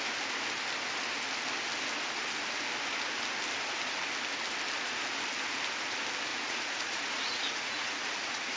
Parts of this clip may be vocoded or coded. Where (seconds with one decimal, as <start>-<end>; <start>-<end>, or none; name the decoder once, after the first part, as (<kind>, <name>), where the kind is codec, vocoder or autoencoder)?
6.3-8.6 (vocoder, Vocos)